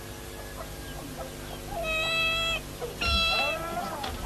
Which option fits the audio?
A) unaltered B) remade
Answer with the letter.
A